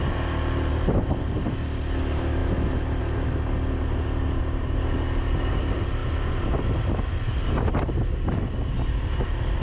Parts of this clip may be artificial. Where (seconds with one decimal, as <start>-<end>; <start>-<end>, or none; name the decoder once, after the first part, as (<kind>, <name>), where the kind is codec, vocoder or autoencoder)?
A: none